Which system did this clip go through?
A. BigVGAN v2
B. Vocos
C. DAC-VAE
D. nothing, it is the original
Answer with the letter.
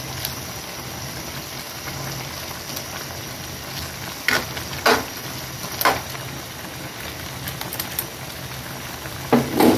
D